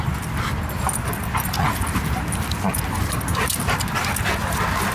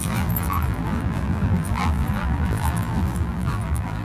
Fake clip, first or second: second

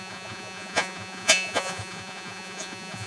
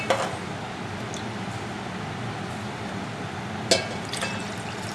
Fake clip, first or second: first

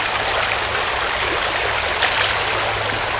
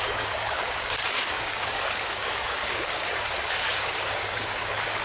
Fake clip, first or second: second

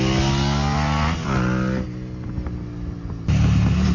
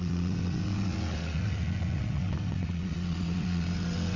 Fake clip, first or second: second